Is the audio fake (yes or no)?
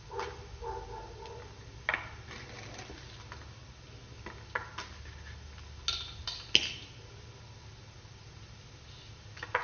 no